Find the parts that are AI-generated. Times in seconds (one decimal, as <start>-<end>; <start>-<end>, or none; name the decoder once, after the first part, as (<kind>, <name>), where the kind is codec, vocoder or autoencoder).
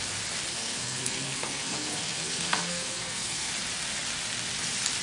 0.5-3.5 (codec, SNAC)